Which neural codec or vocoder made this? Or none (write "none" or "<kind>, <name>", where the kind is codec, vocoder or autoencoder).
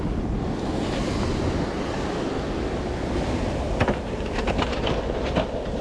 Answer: none